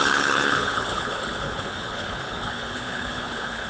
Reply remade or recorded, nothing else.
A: remade